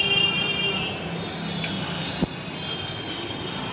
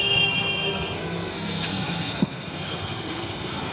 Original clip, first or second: first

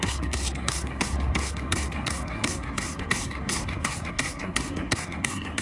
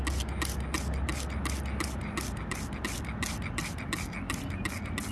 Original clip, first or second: second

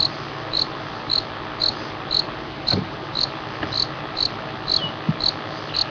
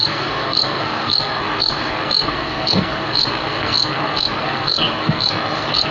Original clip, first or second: first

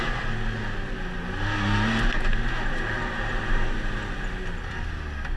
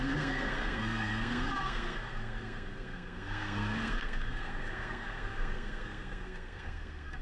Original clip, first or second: first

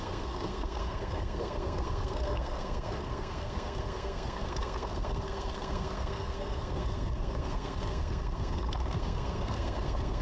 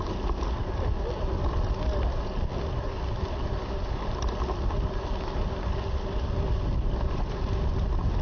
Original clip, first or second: second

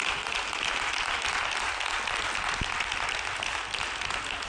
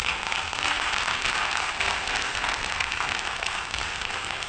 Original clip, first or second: first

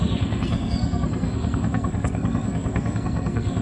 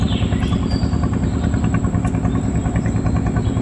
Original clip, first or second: second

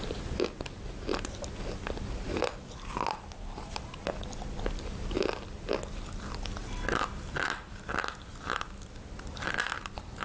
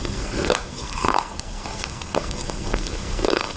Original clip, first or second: first